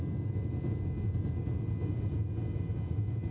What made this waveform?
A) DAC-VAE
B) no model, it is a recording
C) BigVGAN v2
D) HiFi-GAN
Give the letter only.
B